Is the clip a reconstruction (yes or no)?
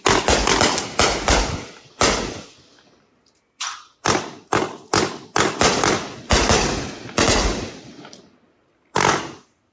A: no